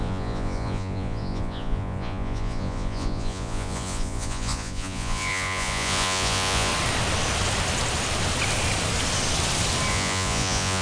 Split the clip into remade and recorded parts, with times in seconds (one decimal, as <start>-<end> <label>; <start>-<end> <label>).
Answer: 0.0-6.7 remade; 6.7-9.9 recorded; 9.9-10.8 remade